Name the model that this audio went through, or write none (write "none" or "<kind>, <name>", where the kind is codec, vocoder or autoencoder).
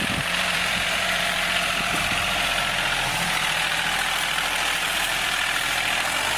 vocoder, BigVGAN v2